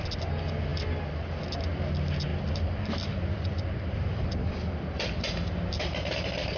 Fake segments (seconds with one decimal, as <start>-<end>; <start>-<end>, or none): 2.3-5.1